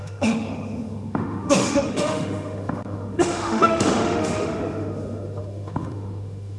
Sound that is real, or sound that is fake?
fake